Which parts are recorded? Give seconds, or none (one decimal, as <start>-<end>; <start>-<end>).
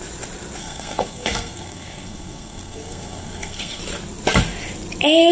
0.0-0.6; 3.8-5.3